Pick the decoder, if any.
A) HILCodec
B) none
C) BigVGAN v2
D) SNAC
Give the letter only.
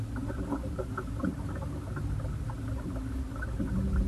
B